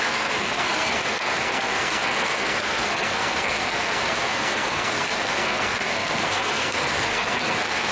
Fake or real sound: fake